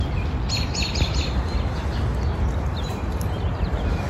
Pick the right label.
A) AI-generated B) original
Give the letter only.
B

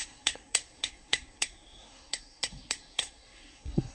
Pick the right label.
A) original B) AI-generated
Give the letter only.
B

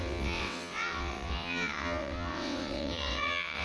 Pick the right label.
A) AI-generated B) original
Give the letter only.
A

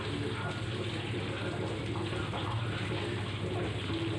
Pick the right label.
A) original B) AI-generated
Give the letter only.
A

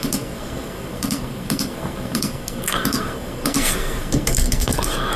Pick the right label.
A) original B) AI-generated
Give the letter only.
B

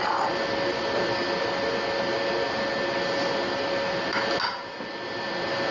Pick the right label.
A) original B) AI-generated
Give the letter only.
A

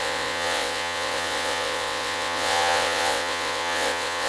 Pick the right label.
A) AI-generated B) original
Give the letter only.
A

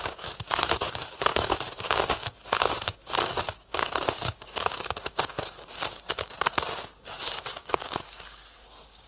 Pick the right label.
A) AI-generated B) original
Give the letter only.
A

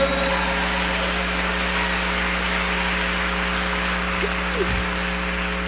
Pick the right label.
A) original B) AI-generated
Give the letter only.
A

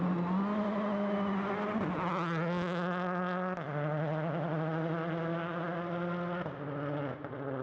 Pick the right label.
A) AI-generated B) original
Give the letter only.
B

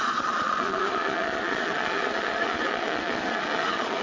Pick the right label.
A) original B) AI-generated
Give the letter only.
B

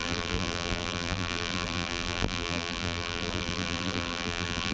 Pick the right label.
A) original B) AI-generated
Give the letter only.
B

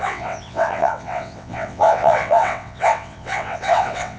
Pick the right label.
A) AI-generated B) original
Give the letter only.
A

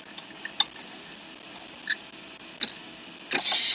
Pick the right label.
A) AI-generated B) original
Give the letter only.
B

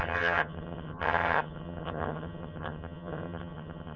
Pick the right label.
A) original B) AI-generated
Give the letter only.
B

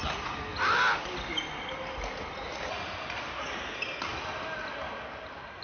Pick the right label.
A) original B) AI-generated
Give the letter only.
A